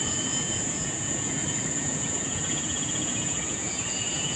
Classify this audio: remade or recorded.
remade